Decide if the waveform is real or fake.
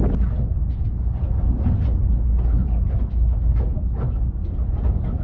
real